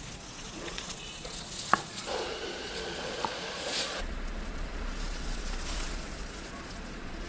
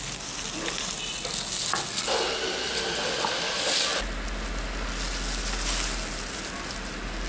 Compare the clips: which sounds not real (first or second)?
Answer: first